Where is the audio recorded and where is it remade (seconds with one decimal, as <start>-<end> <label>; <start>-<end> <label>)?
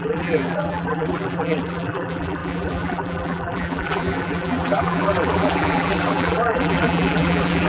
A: 0.0-7.7 remade